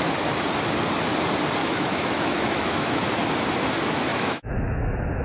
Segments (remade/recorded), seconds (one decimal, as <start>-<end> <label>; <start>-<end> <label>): 0.0-1.6 recorded; 1.6-3.0 remade; 3.0-4.1 recorded; 4.1-4.8 remade; 4.8-5.2 recorded